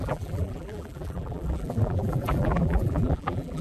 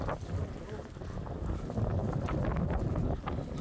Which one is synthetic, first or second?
first